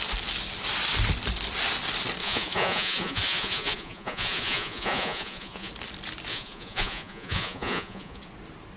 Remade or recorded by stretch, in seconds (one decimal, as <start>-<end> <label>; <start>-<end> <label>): 0.0-2.2 recorded; 2.2-5.7 remade; 5.7-6.3 recorded; 6.3-8.2 remade; 8.2-8.8 recorded